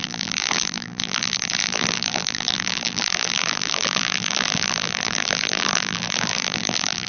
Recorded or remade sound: remade